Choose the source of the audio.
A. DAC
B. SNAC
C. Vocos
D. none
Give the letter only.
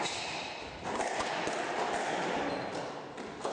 D